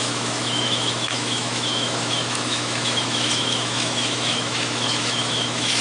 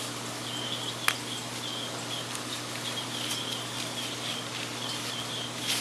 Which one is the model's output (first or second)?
first